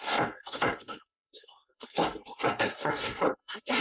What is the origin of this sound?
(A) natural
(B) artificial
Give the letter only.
B